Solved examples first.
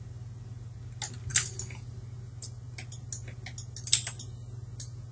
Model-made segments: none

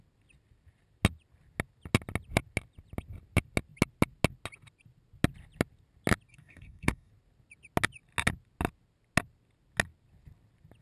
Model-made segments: 6.3-7.1 (codec, DAC)

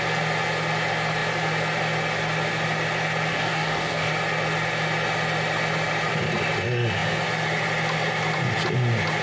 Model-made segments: 3.3-4.1 (codec, DAC)

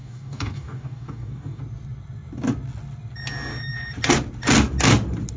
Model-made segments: 0.0-1.6 (codec, DAC)

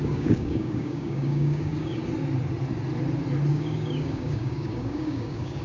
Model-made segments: 0.0-2.0 (codec, DAC); 3.5-5.6

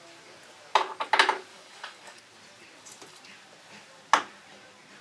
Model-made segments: 1.5-2.2 (codec, DAC)

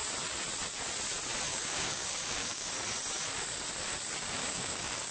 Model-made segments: 1.5-2.7 (codec, DAC); 4.4-5.1